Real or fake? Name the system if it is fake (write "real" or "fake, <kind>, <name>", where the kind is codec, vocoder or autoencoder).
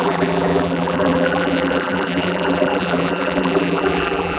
fake, vocoder, BigVGAN v2